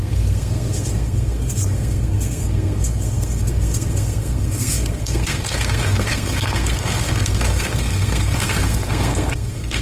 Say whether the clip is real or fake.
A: fake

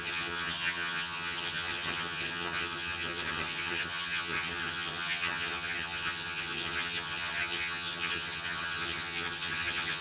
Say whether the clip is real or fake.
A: fake